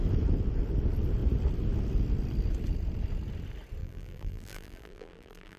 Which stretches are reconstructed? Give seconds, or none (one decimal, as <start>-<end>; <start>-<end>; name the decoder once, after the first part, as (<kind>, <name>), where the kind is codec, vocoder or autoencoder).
3.8-5.6 (vocoder, BigVGAN v2)